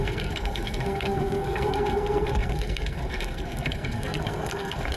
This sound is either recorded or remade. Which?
remade